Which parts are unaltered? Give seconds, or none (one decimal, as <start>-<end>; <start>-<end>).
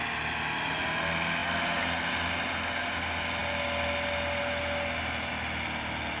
0.0-6.2